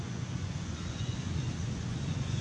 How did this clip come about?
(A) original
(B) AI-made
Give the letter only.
B